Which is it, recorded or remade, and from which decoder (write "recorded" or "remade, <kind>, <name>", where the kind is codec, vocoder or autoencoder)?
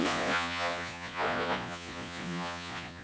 remade, vocoder, Vocos